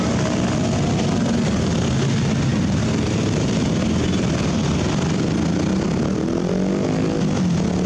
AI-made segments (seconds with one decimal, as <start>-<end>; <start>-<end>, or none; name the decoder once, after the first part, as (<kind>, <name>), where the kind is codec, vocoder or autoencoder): 2.5-4.9 (vocoder, BigVGAN v2)